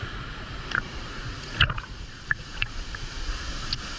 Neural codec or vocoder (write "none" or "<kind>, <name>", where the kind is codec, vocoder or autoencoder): vocoder, Vocos